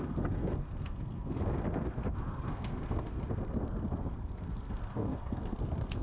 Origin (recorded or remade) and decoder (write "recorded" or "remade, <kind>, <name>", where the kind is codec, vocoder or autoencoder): remade, codec, SNAC